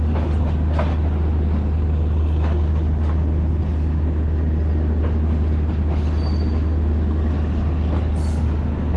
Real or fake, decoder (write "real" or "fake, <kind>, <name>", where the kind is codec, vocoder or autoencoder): real